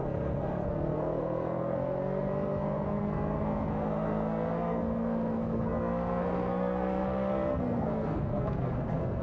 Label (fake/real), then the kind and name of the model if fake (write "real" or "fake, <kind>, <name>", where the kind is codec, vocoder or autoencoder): fake, codec, SNAC